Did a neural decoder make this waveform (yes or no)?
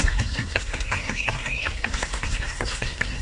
yes